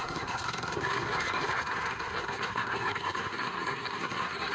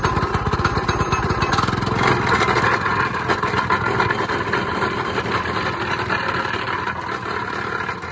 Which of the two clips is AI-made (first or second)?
first